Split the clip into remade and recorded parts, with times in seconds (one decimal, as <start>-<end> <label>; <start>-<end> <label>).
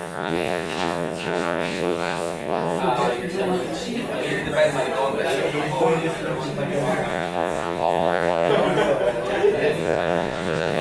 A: 0.0-2.8 remade; 2.8-7.1 recorded; 7.1-8.5 remade; 8.5-9.8 recorded; 9.8-10.8 remade